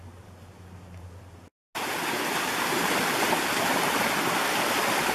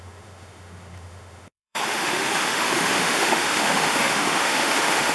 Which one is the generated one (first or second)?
second